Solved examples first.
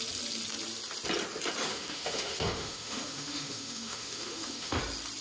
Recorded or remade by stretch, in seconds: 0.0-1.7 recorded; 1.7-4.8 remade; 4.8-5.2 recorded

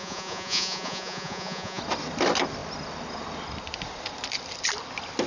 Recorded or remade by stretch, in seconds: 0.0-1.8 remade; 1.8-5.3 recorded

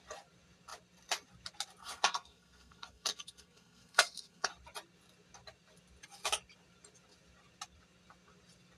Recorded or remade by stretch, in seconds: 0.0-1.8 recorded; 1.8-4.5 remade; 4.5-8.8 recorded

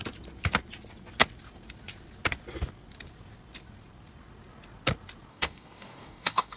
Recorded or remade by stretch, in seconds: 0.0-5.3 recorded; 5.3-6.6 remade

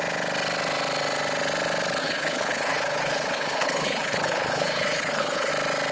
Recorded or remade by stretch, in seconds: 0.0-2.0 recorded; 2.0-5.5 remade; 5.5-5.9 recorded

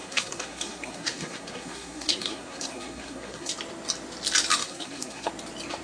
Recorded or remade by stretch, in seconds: 0.0-3.5 remade; 3.5-4.6 recorded; 4.6-5.3 remade; 5.3-5.8 recorded